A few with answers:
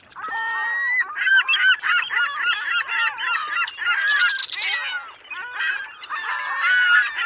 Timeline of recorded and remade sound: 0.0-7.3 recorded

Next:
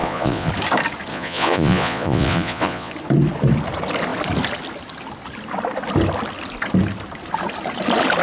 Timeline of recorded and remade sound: 0.0-0.5 remade; 0.5-1.1 recorded; 1.1-2.9 remade; 2.9-8.2 recorded

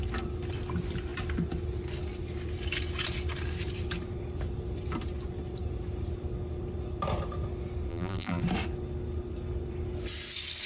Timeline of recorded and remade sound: 0.0-7.9 recorded; 7.9-8.4 remade; 8.4-10.7 recorded